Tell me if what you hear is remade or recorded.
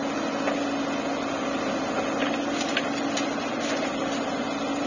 recorded